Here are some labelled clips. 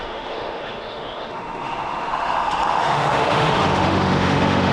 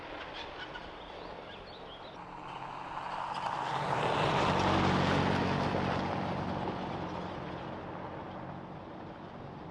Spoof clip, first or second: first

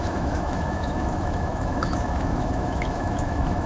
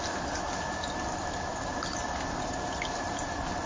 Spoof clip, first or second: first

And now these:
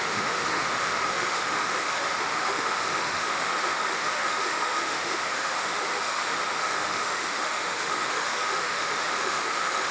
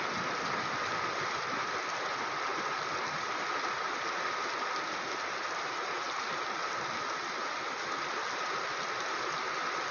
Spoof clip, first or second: first